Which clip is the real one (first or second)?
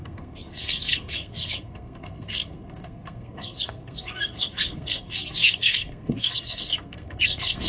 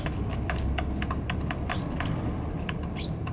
second